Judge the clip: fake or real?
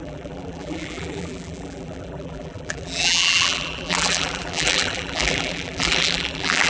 fake